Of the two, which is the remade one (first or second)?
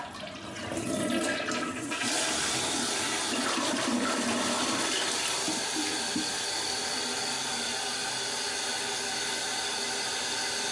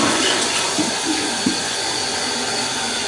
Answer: second